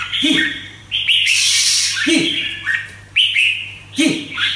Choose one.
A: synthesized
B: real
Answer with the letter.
A